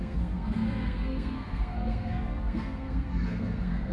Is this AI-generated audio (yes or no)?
yes